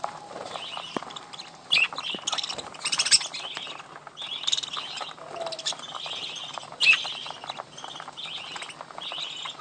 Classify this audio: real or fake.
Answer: real